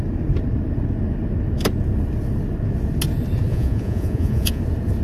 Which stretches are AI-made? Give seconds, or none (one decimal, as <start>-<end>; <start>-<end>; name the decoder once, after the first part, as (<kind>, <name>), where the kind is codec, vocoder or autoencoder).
3.5-4.6 (vocoder, Vocos)